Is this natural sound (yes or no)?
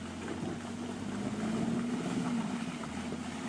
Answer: yes